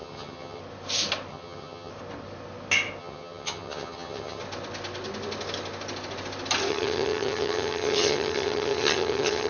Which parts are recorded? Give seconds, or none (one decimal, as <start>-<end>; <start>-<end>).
0.6-1.3; 1.9-3.0; 4.4-6.7